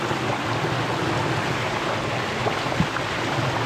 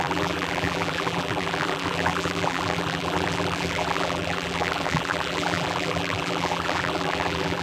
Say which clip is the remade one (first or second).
second